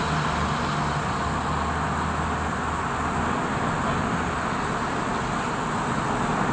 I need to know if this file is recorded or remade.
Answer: recorded